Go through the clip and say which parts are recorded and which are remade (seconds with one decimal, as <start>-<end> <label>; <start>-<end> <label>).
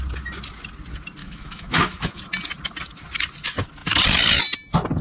0.0-1.2 recorded; 1.2-2.2 remade; 2.2-5.0 recorded